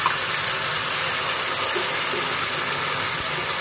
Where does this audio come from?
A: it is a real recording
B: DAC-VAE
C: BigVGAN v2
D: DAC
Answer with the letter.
A